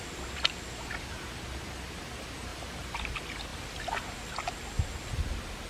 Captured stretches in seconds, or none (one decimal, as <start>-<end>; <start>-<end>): 0.0-2.5; 3.0-5.7